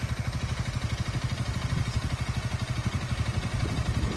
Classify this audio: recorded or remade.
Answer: recorded